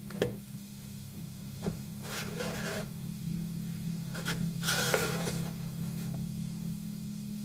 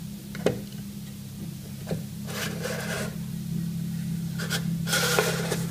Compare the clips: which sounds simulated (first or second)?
first